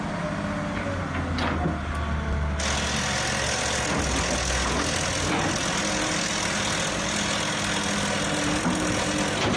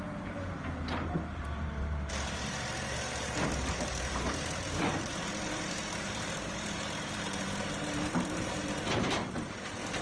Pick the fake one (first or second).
second